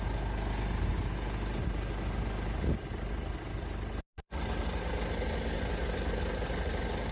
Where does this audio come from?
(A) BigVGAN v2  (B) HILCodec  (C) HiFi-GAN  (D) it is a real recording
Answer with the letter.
D